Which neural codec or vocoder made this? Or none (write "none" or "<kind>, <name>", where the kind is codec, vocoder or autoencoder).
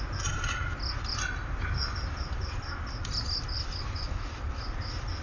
none